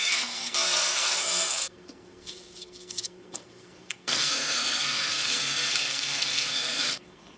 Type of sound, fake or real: fake